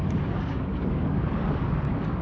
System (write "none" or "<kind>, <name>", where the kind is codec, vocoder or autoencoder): codec, DAC